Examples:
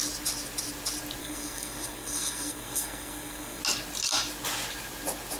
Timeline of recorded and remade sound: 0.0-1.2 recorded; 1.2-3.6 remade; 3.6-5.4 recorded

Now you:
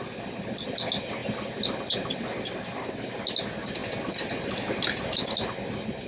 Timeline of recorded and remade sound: 0.0-6.1 recorded